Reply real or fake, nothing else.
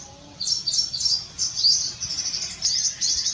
real